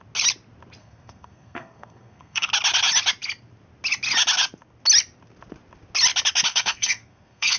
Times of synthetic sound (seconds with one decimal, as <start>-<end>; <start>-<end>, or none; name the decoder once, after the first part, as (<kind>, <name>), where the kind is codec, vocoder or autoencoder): 0.8-2.5 (codec, SNAC); 6.5-7.6